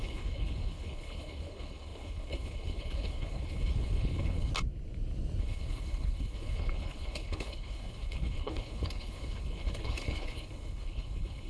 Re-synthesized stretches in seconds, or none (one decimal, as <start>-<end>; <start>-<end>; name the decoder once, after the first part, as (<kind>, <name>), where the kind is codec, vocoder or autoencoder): 0.0-4.5 (codec, HILCodec); 5.4-11.5

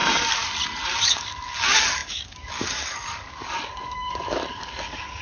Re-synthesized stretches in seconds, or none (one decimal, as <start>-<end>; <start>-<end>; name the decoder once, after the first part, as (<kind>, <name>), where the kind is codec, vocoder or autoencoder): 1.0-5.2 (codec, DAC)

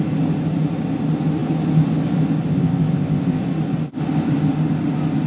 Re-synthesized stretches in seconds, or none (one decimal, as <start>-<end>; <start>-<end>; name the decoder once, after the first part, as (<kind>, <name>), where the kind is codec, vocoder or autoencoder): 2.5-3.4 (codec, ZipCodec)